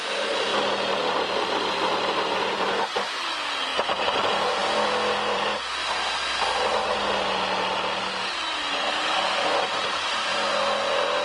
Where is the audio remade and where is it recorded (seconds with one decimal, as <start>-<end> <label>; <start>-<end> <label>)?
0.0-0.5 remade; 0.5-1.0 recorded; 1.0-5.8 remade; 5.8-9.5 recorded; 9.5-11.2 remade